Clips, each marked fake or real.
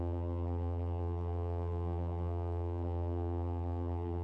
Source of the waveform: fake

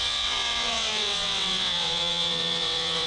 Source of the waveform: fake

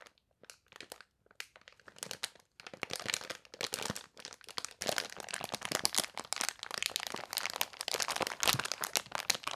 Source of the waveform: real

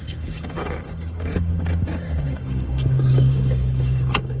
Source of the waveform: fake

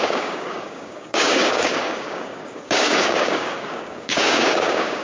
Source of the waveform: fake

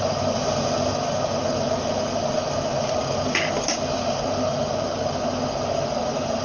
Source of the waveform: real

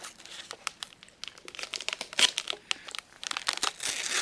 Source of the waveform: real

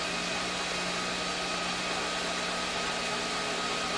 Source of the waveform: real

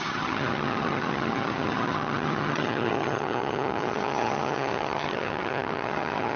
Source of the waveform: fake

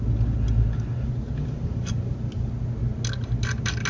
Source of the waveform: real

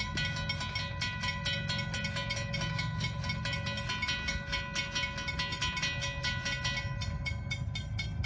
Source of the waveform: real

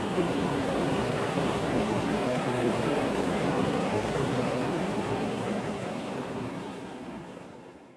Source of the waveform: fake